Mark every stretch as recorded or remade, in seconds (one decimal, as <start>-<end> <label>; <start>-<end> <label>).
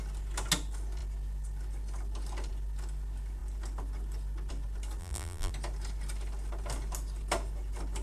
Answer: 0.0-5.0 recorded; 5.0-5.5 remade; 5.5-8.0 recorded